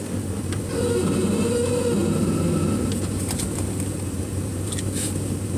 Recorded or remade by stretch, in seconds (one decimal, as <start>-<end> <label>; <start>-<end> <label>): 0.0-5.6 recorded